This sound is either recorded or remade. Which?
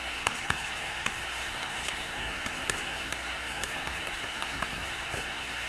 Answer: remade